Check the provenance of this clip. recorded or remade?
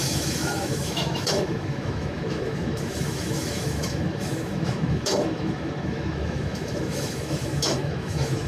remade